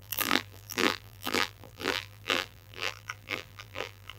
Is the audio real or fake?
fake